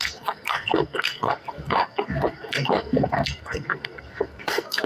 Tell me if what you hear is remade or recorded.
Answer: remade